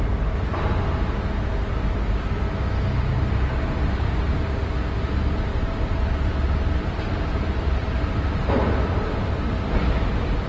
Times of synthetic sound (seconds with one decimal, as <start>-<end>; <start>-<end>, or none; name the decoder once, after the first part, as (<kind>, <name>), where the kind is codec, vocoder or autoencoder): 5.5-8.7 (vocoder, BigVGAN v2)

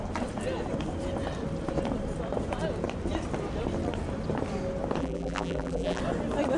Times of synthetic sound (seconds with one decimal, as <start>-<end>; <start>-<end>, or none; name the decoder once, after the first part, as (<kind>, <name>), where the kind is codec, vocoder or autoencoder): 5.0-6.0 (vocoder, BigVGAN v2)

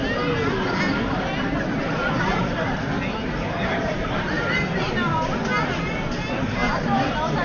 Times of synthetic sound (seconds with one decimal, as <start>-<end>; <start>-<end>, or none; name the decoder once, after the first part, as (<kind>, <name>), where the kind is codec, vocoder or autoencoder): 3.8-4.4 (vocoder, BigVGAN v2)